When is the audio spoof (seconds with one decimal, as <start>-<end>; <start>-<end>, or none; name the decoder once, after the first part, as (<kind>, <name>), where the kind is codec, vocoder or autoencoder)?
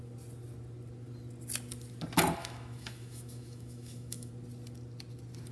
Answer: 2.4-4.3 (autoencoder, DAC-VAE)